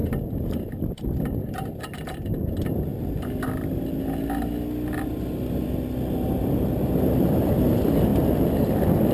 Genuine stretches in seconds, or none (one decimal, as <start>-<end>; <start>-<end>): 0.0-9.1